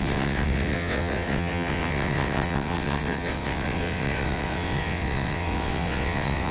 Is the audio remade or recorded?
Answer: remade